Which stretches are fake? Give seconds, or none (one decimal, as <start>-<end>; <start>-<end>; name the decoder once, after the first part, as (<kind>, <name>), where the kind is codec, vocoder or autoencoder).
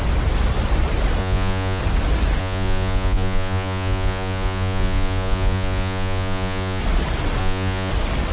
1.2-1.8 (vocoder, Vocos); 2.4-6.8; 7.4-7.9